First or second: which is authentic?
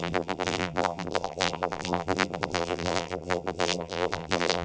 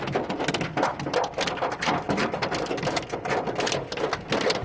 second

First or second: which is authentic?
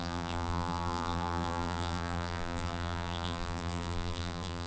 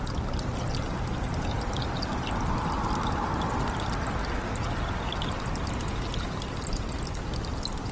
second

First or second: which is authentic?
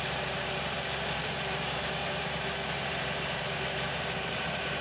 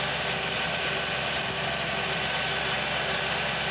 second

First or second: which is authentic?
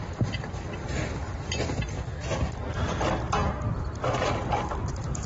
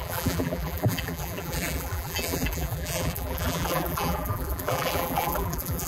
first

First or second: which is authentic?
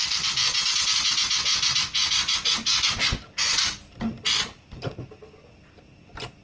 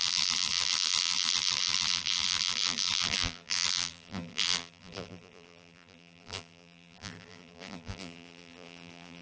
first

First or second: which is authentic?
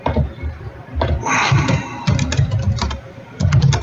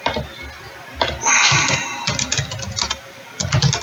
second